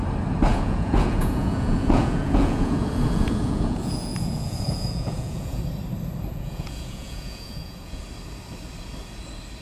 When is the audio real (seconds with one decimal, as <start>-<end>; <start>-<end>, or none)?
0.0-0.5; 5.6-6.3; 8.0-9.6